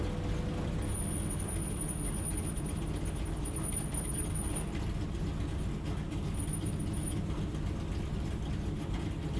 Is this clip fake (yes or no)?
no